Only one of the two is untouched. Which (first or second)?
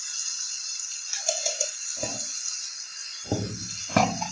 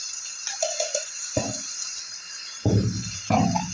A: first